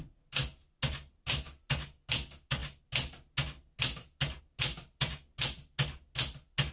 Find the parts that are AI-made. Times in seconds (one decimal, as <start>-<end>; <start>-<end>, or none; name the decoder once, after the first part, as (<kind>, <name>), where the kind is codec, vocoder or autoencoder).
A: none